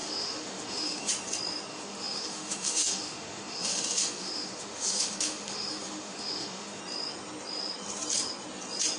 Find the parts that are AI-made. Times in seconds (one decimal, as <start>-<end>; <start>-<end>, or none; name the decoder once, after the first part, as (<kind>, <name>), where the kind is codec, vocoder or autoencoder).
0.0-1.1 (autoencoder, DAC-VAE); 1.7-6.8